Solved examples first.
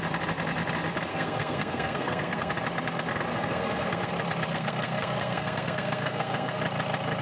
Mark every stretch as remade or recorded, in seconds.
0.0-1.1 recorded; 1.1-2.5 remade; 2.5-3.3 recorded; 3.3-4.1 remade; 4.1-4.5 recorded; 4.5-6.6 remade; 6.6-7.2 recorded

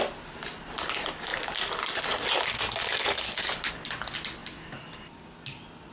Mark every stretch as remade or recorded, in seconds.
0.0-5.9 recorded

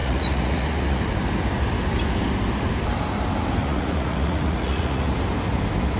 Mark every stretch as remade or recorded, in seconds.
0.0-1.0 remade; 1.0-3.6 recorded; 3.6-5.1 remade; 5.1-6.0 recorded

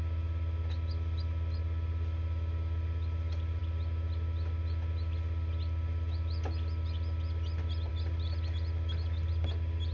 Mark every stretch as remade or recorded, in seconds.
0.0-9.9 recorded